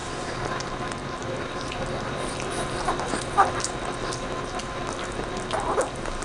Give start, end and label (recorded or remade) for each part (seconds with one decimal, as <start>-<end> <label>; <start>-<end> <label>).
0.0-6.2 recorded